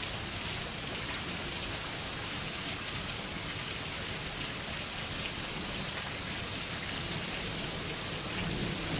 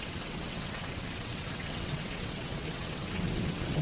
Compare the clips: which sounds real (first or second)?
first